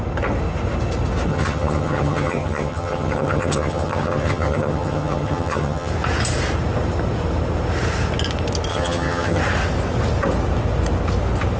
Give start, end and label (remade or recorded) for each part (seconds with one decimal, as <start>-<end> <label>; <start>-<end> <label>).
0.0-1.3 recorded; 1.3-5.9 remade; 5.9-8.7 recorded; 8.7-9.4 remade; 9.4-11.6 recorded